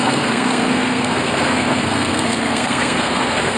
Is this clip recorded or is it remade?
remade